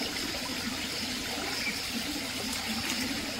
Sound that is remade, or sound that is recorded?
remade